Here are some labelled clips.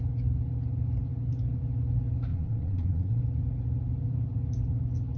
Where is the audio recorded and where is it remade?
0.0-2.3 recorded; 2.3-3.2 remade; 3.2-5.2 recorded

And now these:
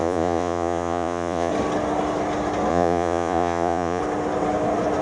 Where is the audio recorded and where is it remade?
0.0-1.5 remade; 1.5-2.7 recorded; 2.7-4.0 remade; 4.0-5.0 recorded

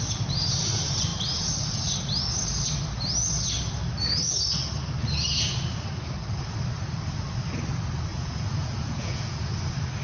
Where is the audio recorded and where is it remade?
0.0-8.1 recorded; 8.1-9.5 remade; 9.5-10.0 recorded